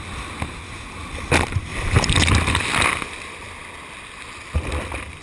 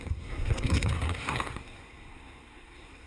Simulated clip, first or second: second